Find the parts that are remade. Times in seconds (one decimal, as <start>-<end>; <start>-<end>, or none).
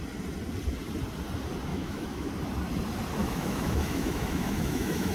1.7-2.3; 3.2-5.1